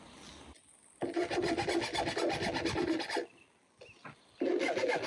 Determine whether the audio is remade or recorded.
recorded